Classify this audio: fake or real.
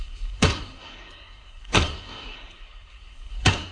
fake